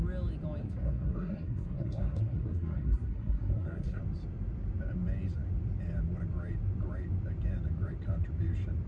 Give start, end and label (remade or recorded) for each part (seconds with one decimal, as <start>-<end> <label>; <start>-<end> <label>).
0.0-0.6 recorded; 0.6-4.0 remade; 4.0-8.9 recorded

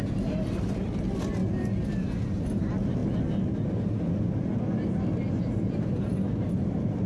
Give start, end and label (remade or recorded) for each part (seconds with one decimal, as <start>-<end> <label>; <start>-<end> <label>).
0.0-7.1 recorded

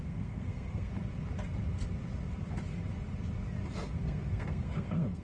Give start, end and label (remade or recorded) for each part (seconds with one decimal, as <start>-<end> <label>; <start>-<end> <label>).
0.0-0.9 remade; 0.9-4.0 recorded; 4.0-5.2 remade

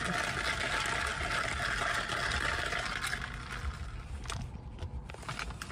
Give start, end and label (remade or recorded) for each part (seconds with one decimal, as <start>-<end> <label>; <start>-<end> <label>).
0.0-5.7 recorded

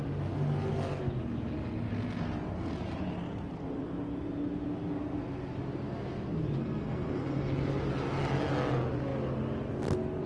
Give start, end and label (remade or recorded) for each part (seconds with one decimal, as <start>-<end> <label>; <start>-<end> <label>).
0.0-6.6 recorded; 6.6-7.5 remade; 7.5-10.3 recorded